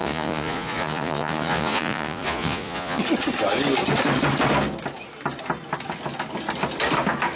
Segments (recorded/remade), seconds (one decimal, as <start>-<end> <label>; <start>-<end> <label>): 0.0-3.0 remade; 3.0-7.4 recorded